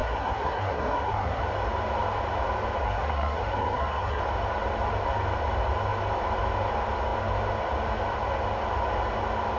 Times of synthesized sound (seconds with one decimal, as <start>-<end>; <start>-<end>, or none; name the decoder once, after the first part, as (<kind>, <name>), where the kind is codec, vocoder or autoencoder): 0.0-1.4 (codec, SNAC); 2.8-4.2